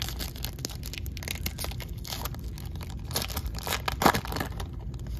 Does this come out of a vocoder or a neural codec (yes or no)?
no